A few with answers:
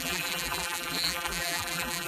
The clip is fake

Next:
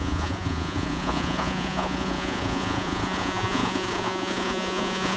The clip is fake